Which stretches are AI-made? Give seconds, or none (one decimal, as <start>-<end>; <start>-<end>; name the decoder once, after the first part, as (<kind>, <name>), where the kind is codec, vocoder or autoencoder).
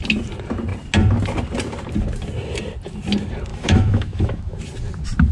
3.5-4.6 (autoencoder, DAC-VAE)